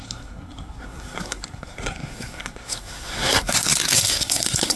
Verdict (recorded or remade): remade